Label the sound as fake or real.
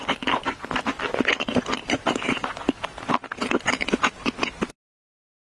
real